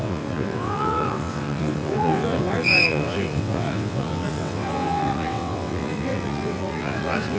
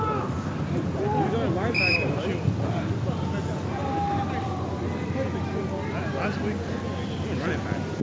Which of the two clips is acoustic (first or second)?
second